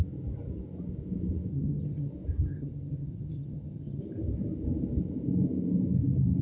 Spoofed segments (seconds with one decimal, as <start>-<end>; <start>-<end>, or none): 1.5-2.1; 2.5-4.0